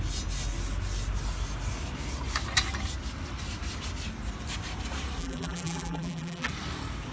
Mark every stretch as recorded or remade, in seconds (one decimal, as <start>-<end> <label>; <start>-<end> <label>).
0.0-5.2 recorded; 5.2-6.5 remade; 6.5-7.1 recorded